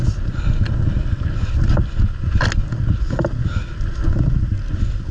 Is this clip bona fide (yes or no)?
yes